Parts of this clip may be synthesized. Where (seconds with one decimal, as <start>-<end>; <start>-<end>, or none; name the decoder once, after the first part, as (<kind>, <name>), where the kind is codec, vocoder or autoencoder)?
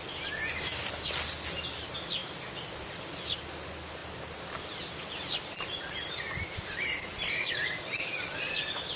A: none